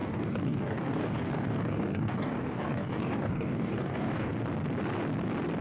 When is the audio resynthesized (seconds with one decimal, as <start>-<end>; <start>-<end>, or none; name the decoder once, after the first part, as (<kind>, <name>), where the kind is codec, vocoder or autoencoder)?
0.0-4.3 (codec, DAC)